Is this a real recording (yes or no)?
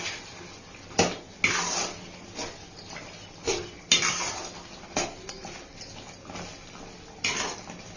yes